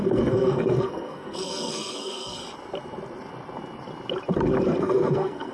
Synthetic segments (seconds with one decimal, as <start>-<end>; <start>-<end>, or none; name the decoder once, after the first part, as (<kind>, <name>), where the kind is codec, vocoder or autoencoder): 0.0-2.4 (codec, SNAC); 4.8-5.5